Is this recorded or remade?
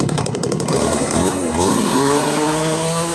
remade